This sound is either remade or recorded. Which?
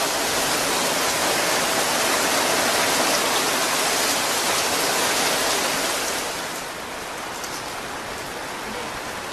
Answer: recorded